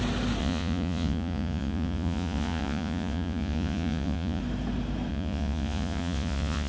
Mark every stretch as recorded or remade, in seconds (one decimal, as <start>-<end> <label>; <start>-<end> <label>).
0.0-0.4 recorded; 0.4-4.4 remade; 4.4-5.1 recorded; 5.1-6.7 remade